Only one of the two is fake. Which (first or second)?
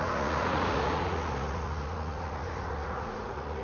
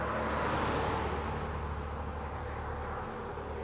first